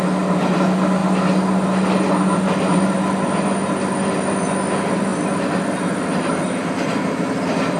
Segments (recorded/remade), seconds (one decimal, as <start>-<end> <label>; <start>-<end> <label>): 0.0-7.8 recorded